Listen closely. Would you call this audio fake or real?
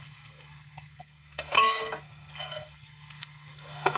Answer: fake